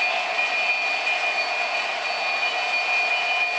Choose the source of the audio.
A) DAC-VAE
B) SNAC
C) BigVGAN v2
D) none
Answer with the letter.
D